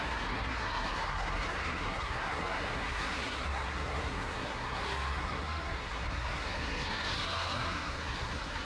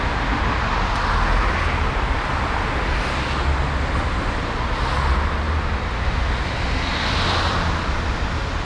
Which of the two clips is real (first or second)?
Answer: second